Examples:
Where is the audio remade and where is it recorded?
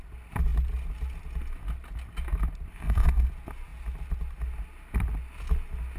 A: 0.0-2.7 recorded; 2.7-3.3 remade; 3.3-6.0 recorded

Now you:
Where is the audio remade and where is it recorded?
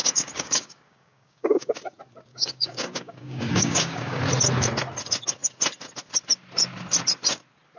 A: 0.0-1.7 remade; 1.7-2.3 recorded; 2.3-4.2 remade; 4.2-7.8 recorded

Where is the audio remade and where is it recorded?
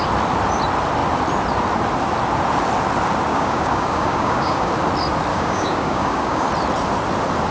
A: 0.0-3.3 recorded; 3.3-4.7 remade; 4.7-5.3 recorded; 5.3-6.5 remade; 6.5-7.5 recorded